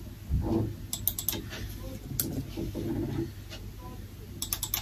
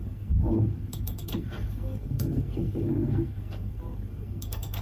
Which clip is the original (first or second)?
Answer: first